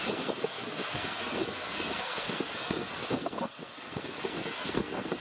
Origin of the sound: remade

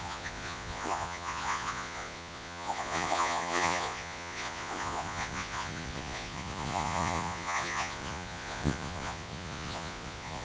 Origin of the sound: remade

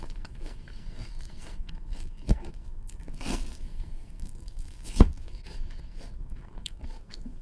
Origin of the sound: remade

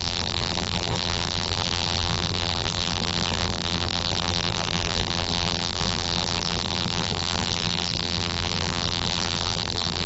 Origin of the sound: remade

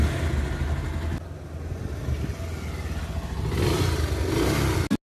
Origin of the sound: recorded